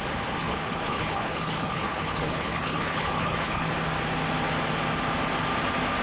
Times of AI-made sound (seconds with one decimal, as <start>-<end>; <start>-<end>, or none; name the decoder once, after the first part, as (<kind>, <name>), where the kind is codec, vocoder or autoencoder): 0.4-3.7 (codec, HILCodec)